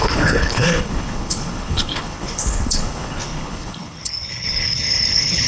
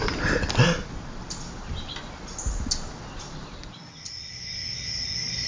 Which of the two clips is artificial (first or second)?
first